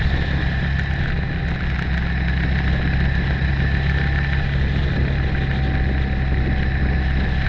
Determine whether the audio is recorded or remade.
recorded